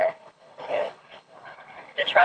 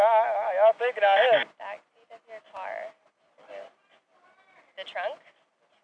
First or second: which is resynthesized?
first